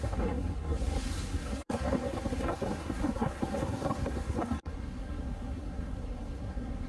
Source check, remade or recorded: remade